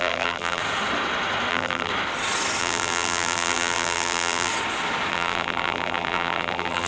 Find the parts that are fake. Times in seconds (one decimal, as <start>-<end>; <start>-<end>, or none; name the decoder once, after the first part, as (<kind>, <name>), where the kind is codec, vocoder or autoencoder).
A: 0.0-0.6 (vocoder, BigVGAN v2); 1.5-1.9; 2.6-4.5; 5.1-6.9